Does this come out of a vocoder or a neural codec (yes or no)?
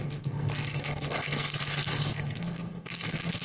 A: yes